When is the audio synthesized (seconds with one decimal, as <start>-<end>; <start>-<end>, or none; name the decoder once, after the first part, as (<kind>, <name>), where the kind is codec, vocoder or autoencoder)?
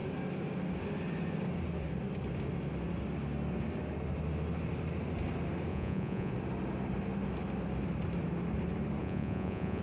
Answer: 5.7-6.3 (vocoder, Vocos); 9.0-9.8